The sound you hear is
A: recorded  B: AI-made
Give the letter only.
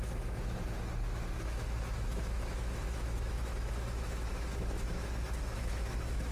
B